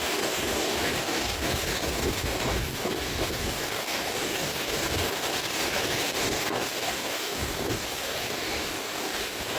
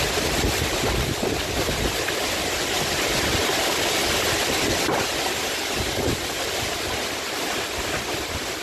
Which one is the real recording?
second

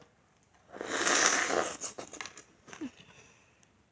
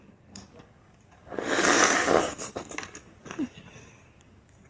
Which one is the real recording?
first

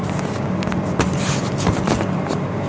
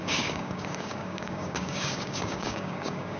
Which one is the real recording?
first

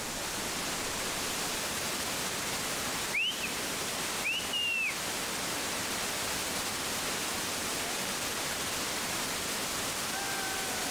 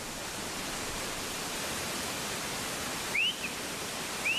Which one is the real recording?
first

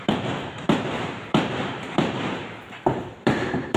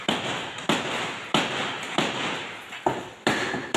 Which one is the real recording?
second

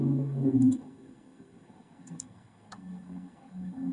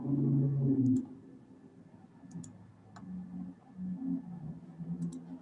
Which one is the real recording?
second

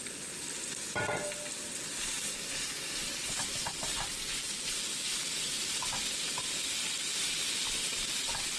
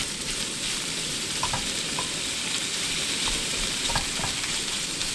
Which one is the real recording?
first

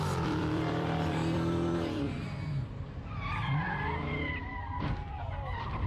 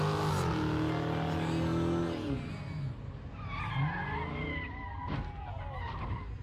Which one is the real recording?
second